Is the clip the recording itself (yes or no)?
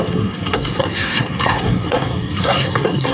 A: no